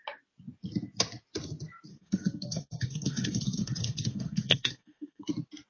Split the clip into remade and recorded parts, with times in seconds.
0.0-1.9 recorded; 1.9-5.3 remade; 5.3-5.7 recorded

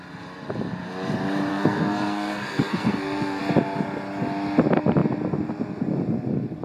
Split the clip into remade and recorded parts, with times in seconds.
0.0-1.5 recorded; 1.5-3.4 remade; 3.4-6.6 recorded

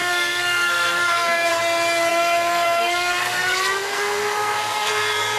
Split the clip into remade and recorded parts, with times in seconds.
0.0-1.5 remade; 1.5-2.1 recorded; 2.1-5.4 remade

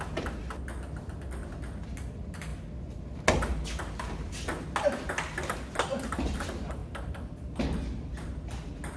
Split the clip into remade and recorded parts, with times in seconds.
0.0-9.0 recorded

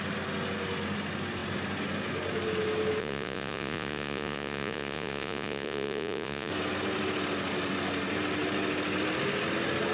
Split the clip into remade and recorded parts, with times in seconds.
0.0-3.0 recorded; 3.0-6.5 remade; 6.5-9.9 recorded

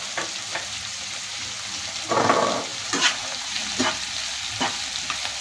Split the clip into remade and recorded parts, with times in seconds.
0.0-0.5 recorded; 0.5-1.1 remade; 1.1-2.7 recorded; 2.7-3.8 remade; 3.8-5.4 recorded

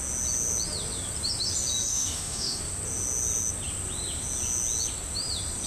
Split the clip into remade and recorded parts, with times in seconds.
0.0-1.9 recorded; 1.9-2.6 remade; 2.6-5.7 recorded

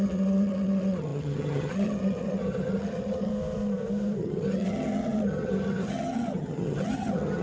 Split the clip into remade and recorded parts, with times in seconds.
0.0-3.3 remade; 3.3-4.2 recorded; 4.2-7.4 remade